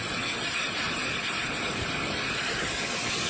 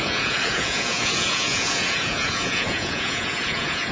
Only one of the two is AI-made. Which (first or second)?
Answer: second